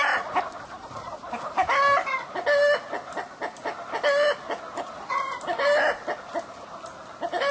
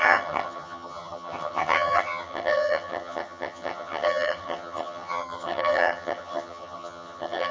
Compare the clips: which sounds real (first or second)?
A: first